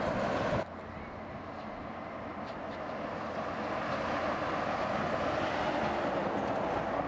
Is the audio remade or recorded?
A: recorded